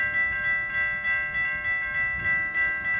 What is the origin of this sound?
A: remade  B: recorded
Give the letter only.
B